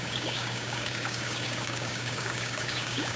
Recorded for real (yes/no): no